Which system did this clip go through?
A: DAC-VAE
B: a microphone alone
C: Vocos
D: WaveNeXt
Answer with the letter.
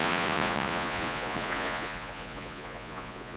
C